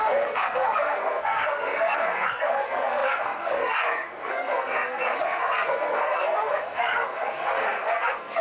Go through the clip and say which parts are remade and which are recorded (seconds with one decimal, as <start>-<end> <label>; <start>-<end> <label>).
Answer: 0.0-8.4 remade